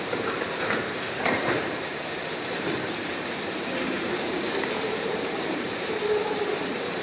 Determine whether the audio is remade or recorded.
remade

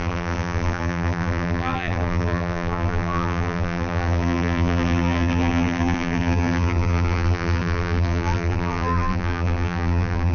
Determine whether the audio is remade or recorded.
remade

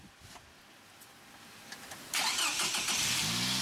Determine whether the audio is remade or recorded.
recorded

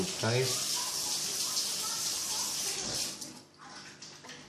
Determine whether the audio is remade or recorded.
recorded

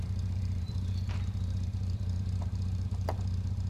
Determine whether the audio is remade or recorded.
remade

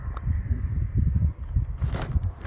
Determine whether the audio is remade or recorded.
remade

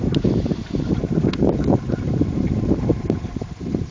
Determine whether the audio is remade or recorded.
remade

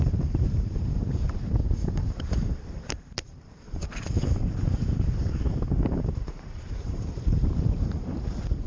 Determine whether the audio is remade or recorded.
remade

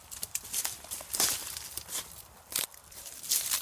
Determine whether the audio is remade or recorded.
remade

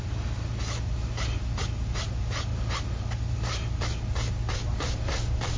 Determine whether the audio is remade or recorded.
recorded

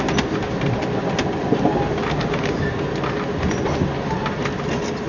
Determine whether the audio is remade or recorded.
recorded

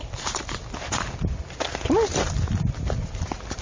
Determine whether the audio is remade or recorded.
recorded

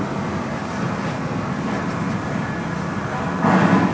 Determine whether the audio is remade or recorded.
recorded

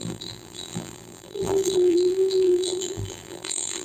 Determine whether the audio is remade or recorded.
remade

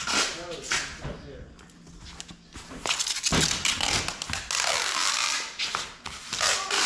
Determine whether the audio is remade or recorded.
recorded